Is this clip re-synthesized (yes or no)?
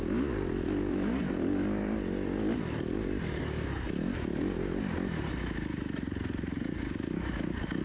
no